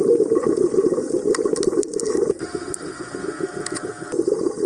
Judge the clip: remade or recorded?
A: recorded